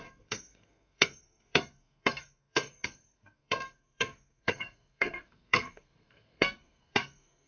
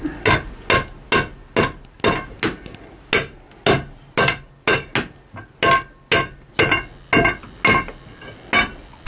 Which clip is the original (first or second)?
second